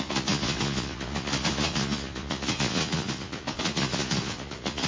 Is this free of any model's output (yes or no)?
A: no